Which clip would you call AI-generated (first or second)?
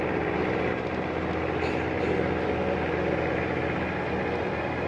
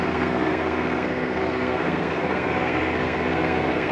second